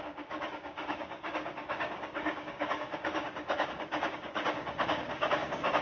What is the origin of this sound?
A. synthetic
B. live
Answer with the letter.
A